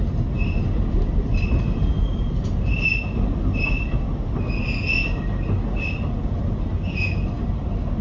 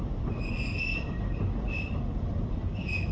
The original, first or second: first